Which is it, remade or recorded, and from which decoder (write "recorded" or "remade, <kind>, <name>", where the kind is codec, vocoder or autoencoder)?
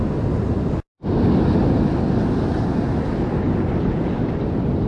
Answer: recorded